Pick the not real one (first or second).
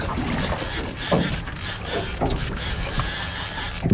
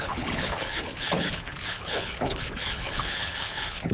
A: second